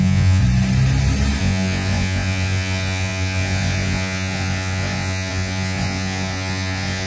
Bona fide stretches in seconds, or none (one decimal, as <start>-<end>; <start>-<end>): 0.4-1.4